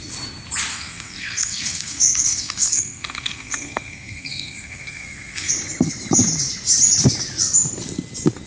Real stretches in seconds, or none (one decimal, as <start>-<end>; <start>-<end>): 0.0-0.7; 5.5-8.5